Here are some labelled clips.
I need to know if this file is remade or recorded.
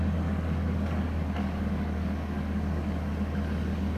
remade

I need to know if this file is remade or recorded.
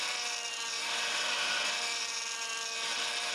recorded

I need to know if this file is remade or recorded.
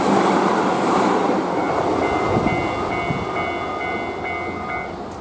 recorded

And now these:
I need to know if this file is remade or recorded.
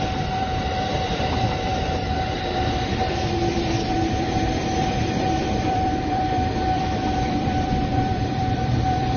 remade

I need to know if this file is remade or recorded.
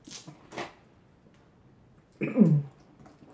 recorded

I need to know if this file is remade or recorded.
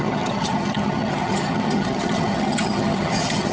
remade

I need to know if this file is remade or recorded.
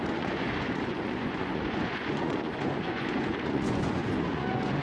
remade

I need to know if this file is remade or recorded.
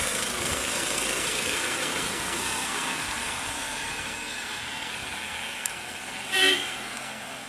remade